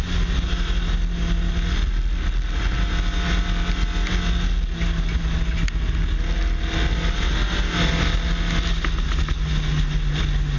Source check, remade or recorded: recorded